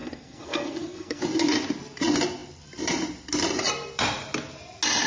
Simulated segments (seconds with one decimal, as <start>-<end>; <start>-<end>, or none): 0.0-1.2